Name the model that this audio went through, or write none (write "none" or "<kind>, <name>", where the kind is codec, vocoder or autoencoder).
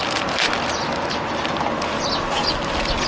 none